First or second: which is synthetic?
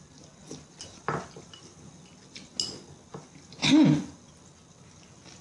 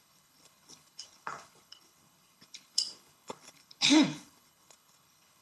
second